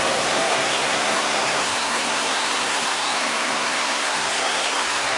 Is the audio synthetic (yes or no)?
yes